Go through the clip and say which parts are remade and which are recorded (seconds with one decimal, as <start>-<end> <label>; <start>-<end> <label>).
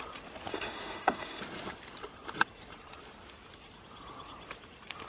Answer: 0.0-0.5 recorded; 0.5-1.4 remade; 1.4-5.1 recorded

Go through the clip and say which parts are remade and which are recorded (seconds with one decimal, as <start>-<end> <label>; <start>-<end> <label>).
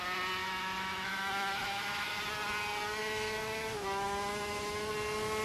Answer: 0.0-0.4 recorded; 0.4-2.2 remade; 2.2-3.0 recorded; 3.0-4.9 remade; 4.9-5.4 recorded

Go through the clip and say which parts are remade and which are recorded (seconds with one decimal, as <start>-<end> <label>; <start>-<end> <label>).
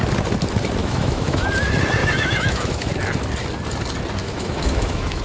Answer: 0.0-0.8 recorded; 0.8-1.5 remade; 1.5-2.0 recorded; 2.0-2.9 remade; 2.9-4.2 recorded; 4.2-5.2 remade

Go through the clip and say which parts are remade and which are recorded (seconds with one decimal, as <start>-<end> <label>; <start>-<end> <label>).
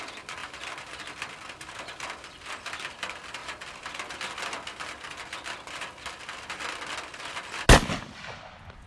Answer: 0.0-8.9 recorded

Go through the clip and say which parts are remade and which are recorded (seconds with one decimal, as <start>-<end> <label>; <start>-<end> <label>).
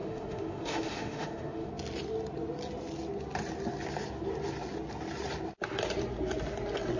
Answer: 0.0-1.7 remade; 1.7-7.0 recorded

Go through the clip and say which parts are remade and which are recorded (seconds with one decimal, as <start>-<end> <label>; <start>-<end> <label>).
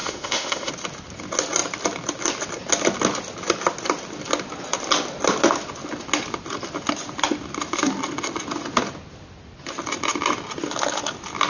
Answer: 0.0-0.7 remade; 0.7-11.5 recorded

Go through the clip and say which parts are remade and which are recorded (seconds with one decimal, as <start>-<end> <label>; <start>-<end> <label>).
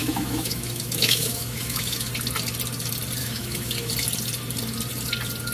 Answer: 0.0-2.1 remade; 2.1-3.2 recorded; 3.2-3.9 remade; 3.9-5.5 recorded